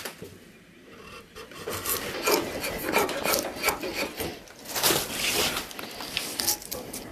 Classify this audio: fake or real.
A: real